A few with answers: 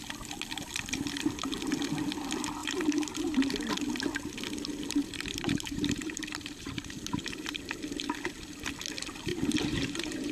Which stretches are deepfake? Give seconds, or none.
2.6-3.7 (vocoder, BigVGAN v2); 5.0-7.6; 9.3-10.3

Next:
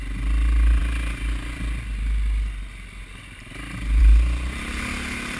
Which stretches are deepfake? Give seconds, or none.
none

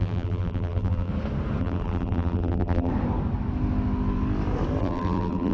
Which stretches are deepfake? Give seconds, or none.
0.0-1.1 (vocoder, BigVGAN v2); 1.6-2.9; 4.8-5.5

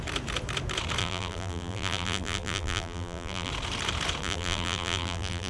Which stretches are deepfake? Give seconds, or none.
1.0-3.5 (vocoder, BigVGAN v2); 4.2-5.5

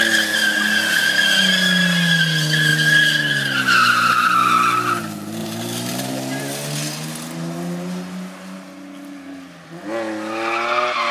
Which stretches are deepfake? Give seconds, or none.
5.4-6.4 (vocoder, BigVGAN v2)

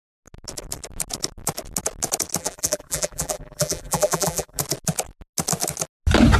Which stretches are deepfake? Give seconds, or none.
2.4-4.6 (vocoder, BigVGAN v2)